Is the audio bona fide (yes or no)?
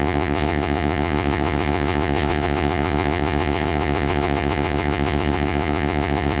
no